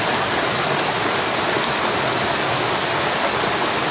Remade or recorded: recorded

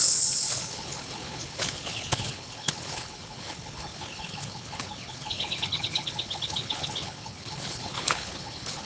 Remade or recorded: remade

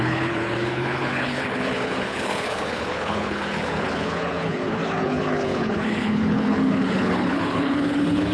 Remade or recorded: remade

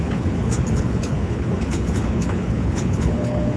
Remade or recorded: remade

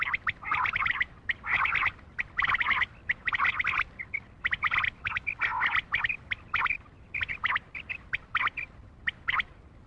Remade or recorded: recorded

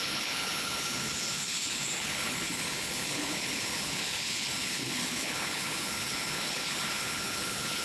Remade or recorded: remade